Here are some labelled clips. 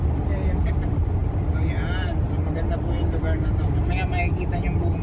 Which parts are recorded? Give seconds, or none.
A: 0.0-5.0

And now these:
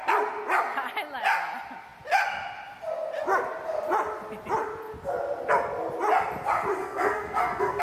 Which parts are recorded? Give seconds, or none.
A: 0.0-6.8

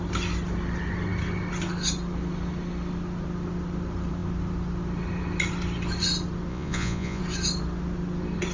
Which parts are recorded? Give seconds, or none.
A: 0.0-6.5; 7.2-8.5

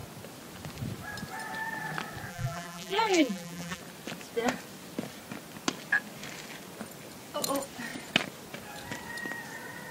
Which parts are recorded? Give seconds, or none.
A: 0.0-2.3; 3.8-9.9

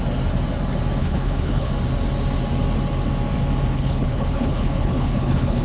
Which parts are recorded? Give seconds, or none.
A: 0.0-1.0; 1.7-3.7